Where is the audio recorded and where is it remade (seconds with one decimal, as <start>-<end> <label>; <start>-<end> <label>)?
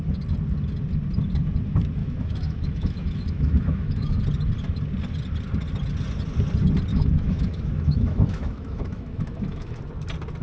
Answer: 0.0-2.0 recorded; 2.0-4.2 remade; 4.2-6.9 recorded; 6.9-9.8 remade; 9.8-10.4 recorded